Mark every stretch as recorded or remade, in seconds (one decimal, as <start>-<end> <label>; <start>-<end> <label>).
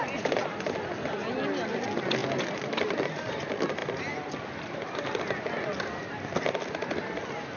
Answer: 0.0-2.2 recorded; 2.2-3.3 remade; 3.3-7.6 recorded